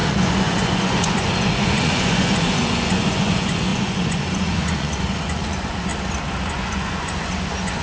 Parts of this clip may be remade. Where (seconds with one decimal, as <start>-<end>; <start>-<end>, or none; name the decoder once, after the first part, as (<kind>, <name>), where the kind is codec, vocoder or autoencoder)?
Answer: 0.0-5.9 (vocoder, Vocos); 6.5-7.8